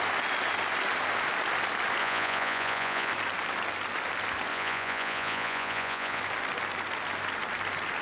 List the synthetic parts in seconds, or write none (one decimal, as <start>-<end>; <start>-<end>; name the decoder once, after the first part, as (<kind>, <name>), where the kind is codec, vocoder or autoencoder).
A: 2.0-3.1 (vocoder, Vocos); 4.5-6.2